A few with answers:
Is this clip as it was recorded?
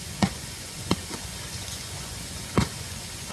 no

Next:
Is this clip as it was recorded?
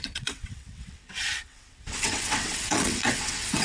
no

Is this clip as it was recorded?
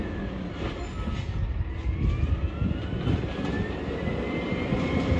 yes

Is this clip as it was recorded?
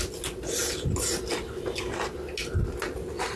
yes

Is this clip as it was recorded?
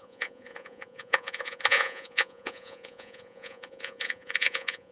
no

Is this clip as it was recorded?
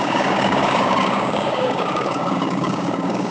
no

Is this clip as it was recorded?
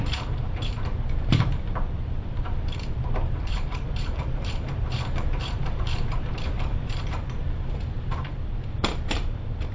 no